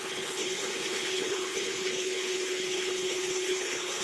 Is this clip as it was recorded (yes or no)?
no